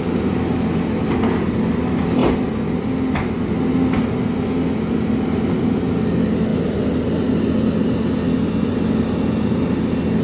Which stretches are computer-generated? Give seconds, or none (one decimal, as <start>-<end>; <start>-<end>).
none